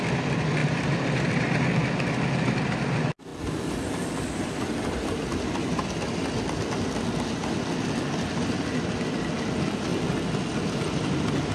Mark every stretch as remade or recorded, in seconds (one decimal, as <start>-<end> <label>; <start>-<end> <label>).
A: 0.0-0.6 recorded; 0.6-1.6 remade; 1.6-11.5 recorded